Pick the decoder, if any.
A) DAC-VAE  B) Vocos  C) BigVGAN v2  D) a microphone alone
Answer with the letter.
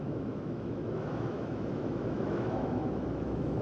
A